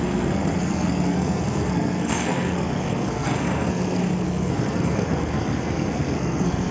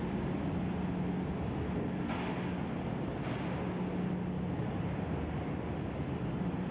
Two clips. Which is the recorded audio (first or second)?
second